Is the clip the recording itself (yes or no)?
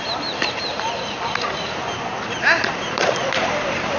no